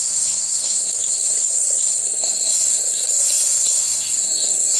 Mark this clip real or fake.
fake